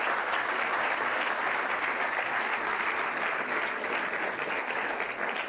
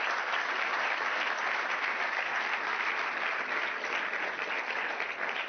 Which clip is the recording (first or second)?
first